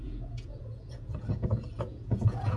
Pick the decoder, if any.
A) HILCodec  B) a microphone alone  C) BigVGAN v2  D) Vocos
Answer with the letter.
D